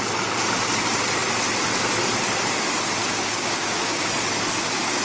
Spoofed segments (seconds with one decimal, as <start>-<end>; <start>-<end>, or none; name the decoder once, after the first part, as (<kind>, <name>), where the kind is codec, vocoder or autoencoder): 3.0-4.1 (codec, DAC)